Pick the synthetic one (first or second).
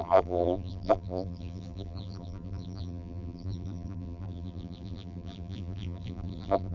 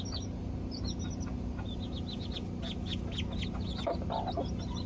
first